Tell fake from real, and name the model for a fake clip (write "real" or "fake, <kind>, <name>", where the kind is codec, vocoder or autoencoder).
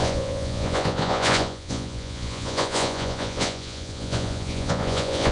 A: fake, vocoder, Vocos